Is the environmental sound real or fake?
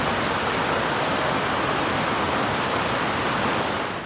real